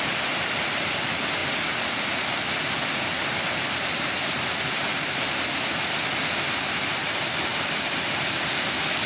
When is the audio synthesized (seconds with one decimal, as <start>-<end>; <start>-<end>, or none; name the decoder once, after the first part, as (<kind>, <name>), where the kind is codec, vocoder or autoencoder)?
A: none